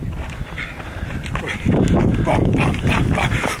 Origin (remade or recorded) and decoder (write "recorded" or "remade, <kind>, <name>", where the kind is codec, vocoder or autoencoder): recorded